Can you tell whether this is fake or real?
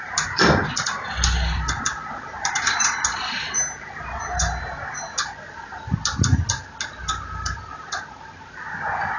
real